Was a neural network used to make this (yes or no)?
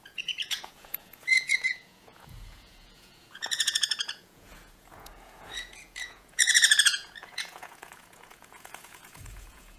yes